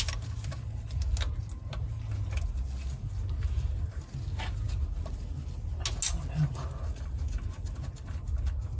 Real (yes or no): yes